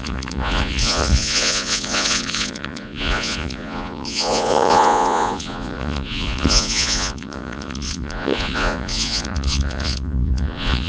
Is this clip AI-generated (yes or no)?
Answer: yes